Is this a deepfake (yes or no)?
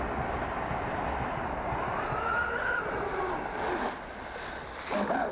no